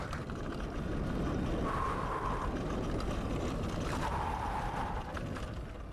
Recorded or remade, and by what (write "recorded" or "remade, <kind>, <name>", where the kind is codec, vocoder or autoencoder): recorded